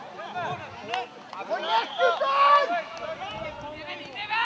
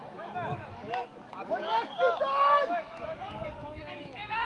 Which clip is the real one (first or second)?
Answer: first